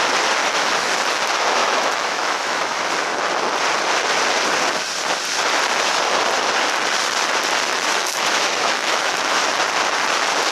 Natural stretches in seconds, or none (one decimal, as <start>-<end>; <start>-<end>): 0.0-0.4; 0.9-1.6; 2.9-7.7; 9.4-10.5